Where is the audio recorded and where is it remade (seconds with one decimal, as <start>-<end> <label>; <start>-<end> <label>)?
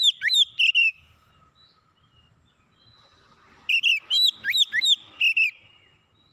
0.0-0.8 recorded; 0.8-1.3 remade; 1.3-6.3 recorded